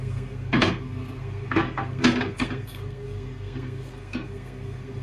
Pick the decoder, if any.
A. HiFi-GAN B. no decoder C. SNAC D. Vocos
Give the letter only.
C